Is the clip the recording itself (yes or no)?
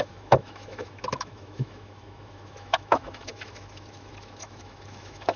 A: no